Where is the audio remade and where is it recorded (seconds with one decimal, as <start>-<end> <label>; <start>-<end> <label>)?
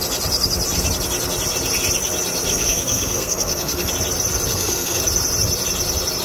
0.0-2.5 recorded; 2.5-3.9 remade; 3.9-4.5 recorded; 4.5-5.0 remade; 5.0-6.2 recorded